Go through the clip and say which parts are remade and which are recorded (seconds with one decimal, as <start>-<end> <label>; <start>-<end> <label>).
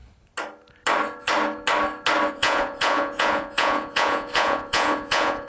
0.0-2.3 recorded; 2.3-5.5 remade